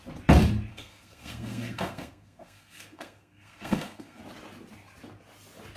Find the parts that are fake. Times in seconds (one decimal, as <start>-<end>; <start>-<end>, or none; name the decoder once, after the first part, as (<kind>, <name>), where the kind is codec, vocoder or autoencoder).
0.7-4.2 (codec, SNAC)